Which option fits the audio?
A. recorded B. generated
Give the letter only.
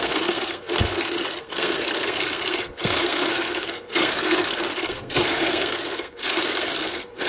B